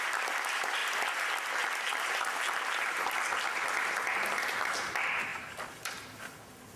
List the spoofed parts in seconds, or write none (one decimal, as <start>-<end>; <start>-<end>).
5.3-6.2